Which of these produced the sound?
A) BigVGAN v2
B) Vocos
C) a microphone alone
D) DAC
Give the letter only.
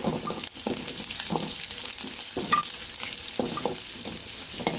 C